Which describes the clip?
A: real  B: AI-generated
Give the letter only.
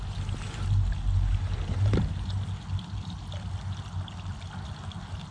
A